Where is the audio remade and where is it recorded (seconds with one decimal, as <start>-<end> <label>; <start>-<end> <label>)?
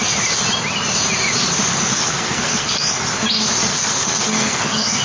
0.0-1.9 recorded; 1.9-3.0 remade; 3.0-3.7 recorded; 3.7-5.0 remade